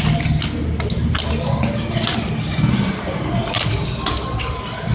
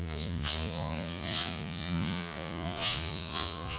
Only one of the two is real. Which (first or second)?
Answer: first